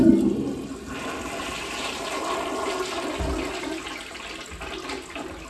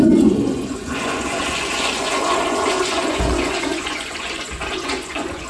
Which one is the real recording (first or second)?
first